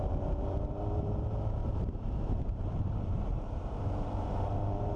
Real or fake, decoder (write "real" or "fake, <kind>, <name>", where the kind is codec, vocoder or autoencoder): fake, vocoder, BigVGAN v2